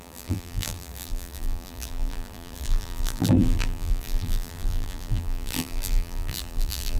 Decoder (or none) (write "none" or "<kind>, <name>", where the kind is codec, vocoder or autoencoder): vocoder, BigVGAN v2